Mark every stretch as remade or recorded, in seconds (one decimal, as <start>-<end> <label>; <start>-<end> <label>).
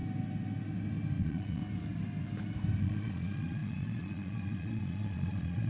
0.0-1.2 recorded; 1.2-1.6 remade; 1.6-2.8 recorded; 2.8-5.7 remade